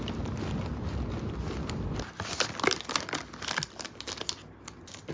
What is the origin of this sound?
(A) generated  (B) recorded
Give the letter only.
B